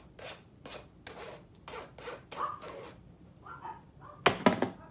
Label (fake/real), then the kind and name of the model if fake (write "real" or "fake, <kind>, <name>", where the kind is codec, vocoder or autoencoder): real